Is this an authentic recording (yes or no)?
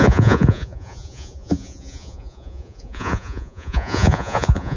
no